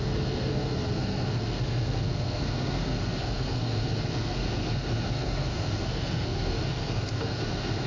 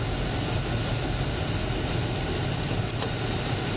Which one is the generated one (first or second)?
first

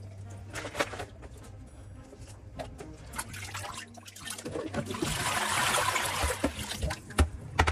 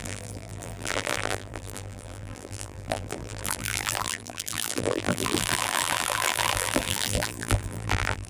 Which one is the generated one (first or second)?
second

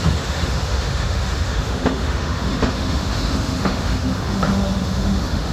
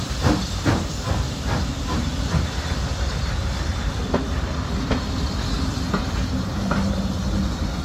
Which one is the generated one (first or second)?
first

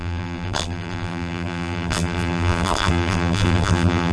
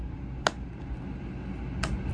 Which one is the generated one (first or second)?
first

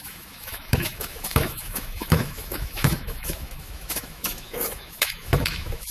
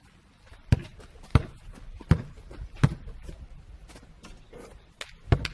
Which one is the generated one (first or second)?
first